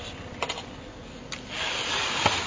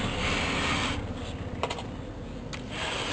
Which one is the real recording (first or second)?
second